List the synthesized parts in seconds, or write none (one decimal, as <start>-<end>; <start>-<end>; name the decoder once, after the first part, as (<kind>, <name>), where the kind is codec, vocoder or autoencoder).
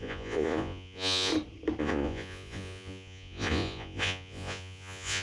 0.0-1.3 (vocoder, Vocos); 1.8-5.2